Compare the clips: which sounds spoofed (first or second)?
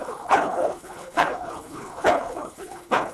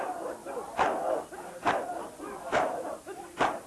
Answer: first